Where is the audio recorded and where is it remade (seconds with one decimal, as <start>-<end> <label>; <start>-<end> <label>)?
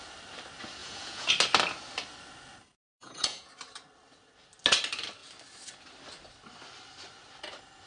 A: 0.0-0.8 recorded; 0.8-1.3 remade; 1.3-2.9 recorded; 2.9-3.5 remade; 3.5-7.9 recorded